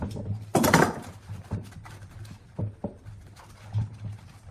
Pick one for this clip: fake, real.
real